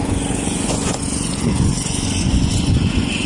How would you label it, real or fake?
fake